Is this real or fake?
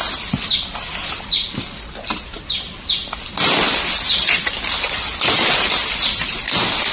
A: real